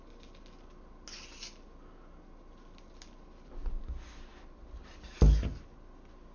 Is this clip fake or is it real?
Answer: real